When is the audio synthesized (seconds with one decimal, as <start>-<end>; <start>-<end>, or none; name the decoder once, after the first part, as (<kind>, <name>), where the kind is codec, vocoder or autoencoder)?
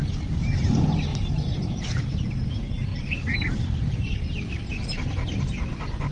0.0-0.6 (vocoder, BigVGAN v2); 1.1-2.3; 2.9-4.7